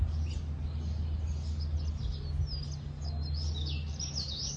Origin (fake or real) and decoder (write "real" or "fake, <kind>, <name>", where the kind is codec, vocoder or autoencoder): real